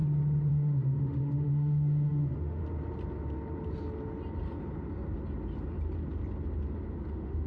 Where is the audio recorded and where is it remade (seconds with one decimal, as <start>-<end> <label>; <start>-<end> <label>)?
0.0-0.5 recorded; 0.5-2.6 remade; 2.6-7.1 recorded; 7.1-7.5 remade